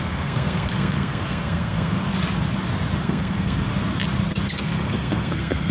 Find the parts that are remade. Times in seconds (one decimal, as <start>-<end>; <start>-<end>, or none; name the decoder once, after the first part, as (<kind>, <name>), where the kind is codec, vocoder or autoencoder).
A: 0.0-2.1 (codec, SNAC); 3.0-3.7; 4.5-5.7